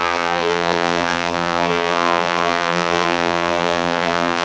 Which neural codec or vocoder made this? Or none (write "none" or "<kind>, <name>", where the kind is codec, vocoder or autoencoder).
vocoder, BigVGAN v2